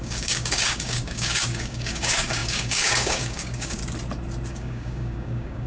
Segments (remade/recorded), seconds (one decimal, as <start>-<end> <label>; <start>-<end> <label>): 0.0-3.8 remade; 3.8-4.5 recorded; 4.5-5.7 remade